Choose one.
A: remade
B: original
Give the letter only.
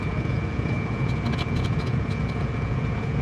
A